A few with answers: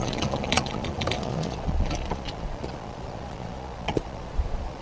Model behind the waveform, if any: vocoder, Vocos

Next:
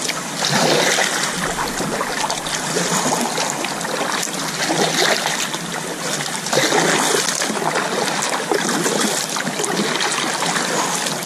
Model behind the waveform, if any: none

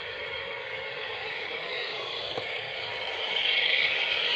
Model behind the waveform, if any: codec, DAC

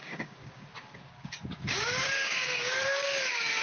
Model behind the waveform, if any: codec, DAC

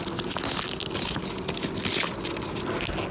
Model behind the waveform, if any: none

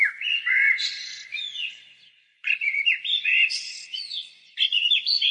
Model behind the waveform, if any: vocoder, Vocos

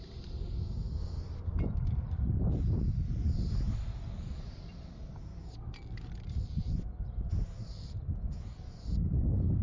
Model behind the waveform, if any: none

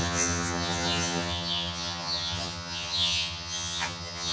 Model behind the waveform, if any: vocoder, HiFi-GAN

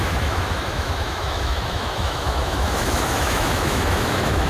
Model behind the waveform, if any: autoencoder, DAC-VAE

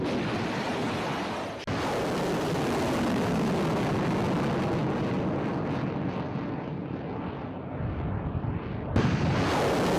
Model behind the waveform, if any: none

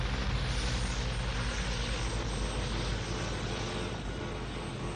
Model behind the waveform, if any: none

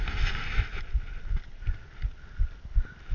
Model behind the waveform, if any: none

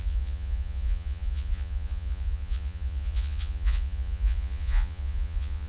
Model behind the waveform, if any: vocoder, Vocos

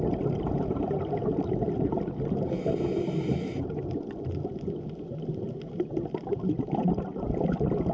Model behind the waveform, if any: none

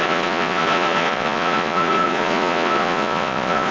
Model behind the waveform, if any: vocoder, Vocos